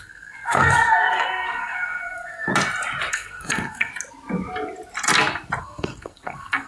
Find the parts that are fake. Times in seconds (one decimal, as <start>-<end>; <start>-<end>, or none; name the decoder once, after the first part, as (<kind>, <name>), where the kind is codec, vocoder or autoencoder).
0.0-2.5 (codec, SNAC); 3.1-3.9; 5.6-6.7